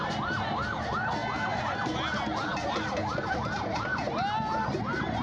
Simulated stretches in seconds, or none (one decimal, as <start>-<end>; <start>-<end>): none